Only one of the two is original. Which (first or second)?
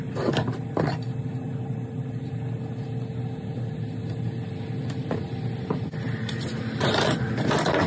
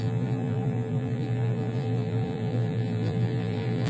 first